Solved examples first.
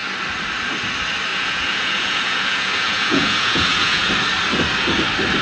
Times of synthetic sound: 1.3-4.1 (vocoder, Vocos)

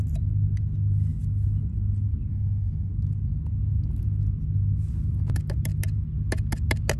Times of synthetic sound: 2.3-2.9 (autoencoder, DAC-VAE)

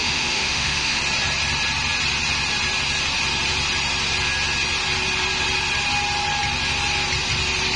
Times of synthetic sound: 0.0-1.0 (autoencoder, DAC-VAE)

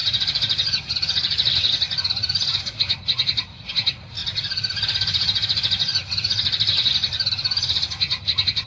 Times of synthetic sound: none

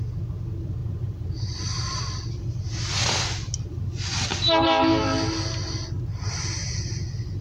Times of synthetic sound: 0.8-2.0 (vocoder, BigVGAN v2)

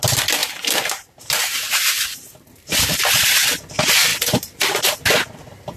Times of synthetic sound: 0.4-1.6 (vocoder, BigVGAN v2); 4.1-4.8

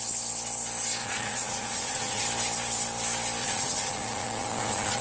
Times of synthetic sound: 1.0-2.2 (vocoder, Vocos); 3.4-5.0

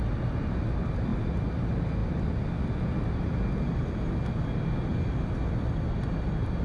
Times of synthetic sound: none